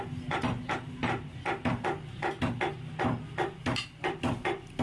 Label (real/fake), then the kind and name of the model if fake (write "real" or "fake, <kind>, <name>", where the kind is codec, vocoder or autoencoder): real